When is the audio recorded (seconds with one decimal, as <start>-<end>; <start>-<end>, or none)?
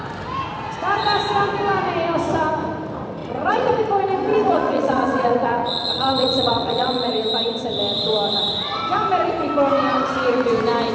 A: 0.0-3.2; 3.8-4.3; 7.1-10.9